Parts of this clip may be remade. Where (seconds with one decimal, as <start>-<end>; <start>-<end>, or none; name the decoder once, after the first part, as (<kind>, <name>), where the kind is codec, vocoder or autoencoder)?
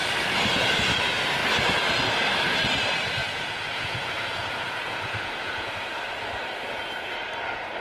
3.2-5.7 (vocoder, Vocos)